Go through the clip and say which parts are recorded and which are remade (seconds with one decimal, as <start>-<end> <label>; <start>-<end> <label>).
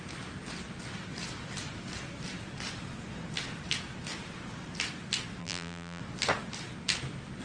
0.0-5.4 recorded; 5.4-6.0 remade; 6.0-7.4 recorded